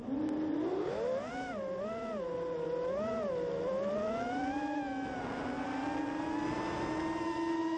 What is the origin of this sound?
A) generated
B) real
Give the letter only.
B